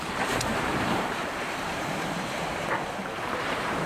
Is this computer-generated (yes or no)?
yes